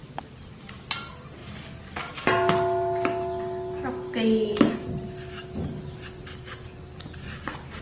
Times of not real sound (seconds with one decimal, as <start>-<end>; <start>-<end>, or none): 0.0-0.5